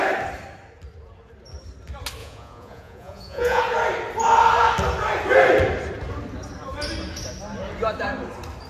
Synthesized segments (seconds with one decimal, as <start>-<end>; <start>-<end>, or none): 2.2-3.6